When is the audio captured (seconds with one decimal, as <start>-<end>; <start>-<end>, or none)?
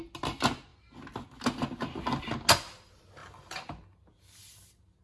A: 0.0-5.0